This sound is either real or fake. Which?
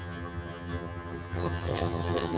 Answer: fake